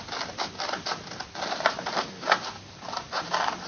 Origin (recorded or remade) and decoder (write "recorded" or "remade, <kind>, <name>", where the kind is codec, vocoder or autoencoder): recorded